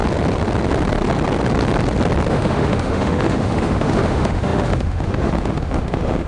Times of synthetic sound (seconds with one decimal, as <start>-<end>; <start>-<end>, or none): 2.3-6.3